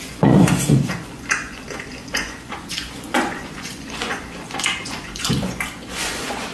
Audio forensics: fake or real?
fake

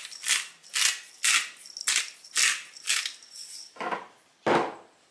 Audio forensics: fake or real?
real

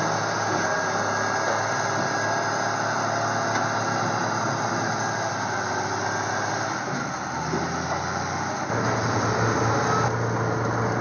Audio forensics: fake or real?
real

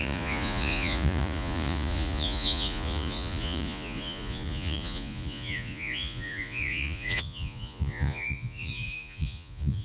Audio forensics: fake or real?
fake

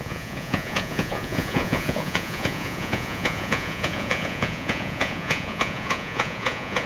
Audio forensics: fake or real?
fake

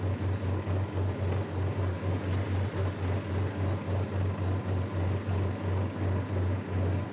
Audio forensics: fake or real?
real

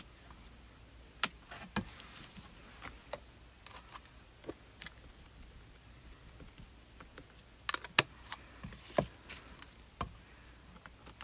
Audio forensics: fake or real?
real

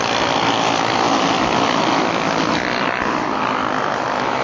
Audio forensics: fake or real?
real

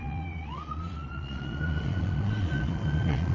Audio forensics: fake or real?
fake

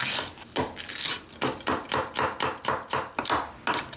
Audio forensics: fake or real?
real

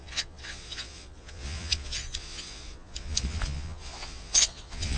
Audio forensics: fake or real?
fake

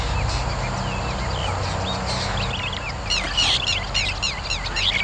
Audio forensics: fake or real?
real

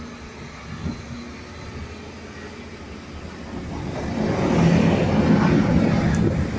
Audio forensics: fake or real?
real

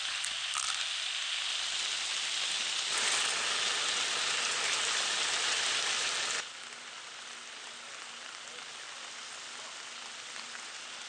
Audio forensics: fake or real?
real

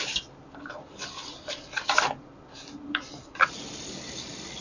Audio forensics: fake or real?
real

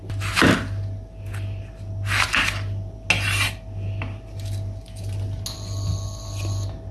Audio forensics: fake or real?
real